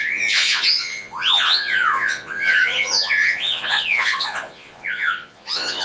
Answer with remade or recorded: remade